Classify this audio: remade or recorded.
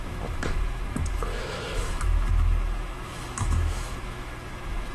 remade